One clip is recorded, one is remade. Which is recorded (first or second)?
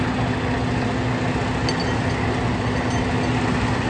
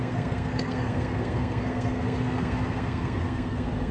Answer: first